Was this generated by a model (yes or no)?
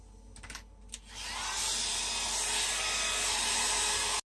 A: no